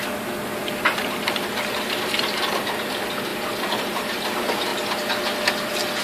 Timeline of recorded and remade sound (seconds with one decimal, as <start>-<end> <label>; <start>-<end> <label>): 0.0-0.6 recorded; 0.6-2.6 remade; 2.6-3.3 recorded; 3.3-4.2 remade; 4.2-6.0 recorded